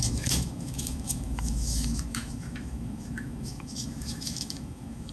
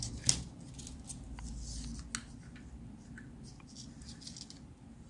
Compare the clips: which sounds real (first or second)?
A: second